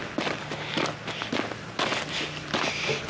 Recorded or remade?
recorded